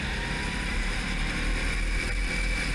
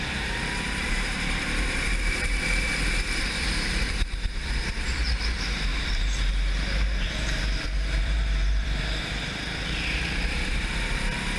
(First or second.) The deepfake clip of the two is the second